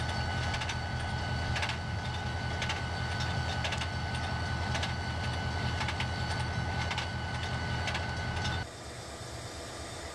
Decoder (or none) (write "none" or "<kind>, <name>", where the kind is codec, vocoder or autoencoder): none